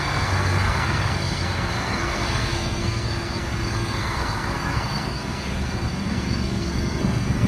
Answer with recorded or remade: remade